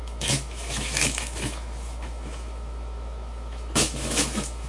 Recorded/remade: remade